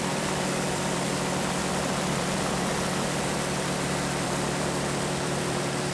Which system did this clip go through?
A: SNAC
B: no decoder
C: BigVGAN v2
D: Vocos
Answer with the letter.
C